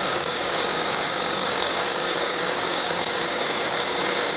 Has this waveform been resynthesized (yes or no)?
yes